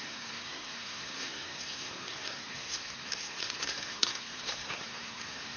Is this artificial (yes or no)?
yes